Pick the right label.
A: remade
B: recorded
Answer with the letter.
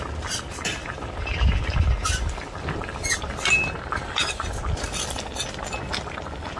B